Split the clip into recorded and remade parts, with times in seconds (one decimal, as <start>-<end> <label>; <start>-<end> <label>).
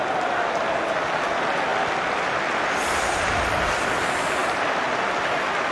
0.0-1.7 recorded; 1.7-3.8 remade; 3.8-4.4 recorded; 4.4-5.2 remade; 5.2-5.7 recorded